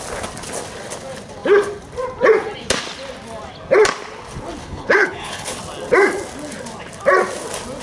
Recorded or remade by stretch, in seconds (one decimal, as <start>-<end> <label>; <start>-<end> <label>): 0.0-4.6 recorded; 4.6-5.6 remade; 5.6-7.8 recorded